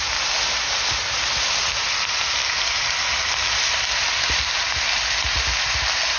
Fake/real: real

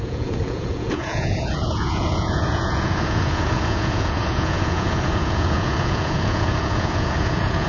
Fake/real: fake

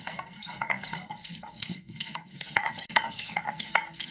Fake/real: fake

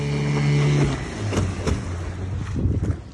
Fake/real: real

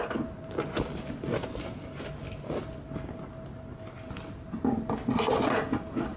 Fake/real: real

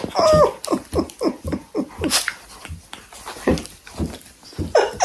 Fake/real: real